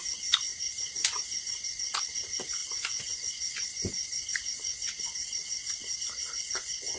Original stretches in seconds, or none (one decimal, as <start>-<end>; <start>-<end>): 0.0-7.0